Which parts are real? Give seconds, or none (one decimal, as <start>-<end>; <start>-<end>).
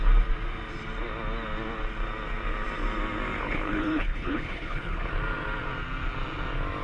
0.0-3.4; 5.1-6.8